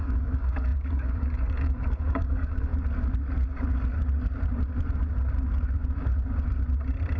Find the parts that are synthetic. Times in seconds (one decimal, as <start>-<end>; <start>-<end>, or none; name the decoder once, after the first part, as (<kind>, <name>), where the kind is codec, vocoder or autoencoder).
0.0-2.7 (codec, DAC)